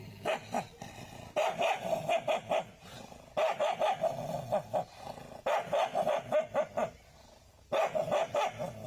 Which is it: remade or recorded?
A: recorded